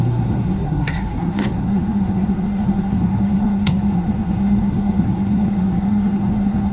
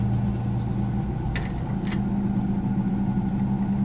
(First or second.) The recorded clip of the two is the second